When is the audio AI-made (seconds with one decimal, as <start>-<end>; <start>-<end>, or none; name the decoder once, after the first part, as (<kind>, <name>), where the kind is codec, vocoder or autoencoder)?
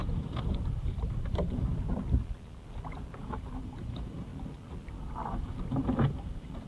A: 0.0-1.7 (vocoder, BigVGAN v2); 3.2-4.3; 5.0-6.7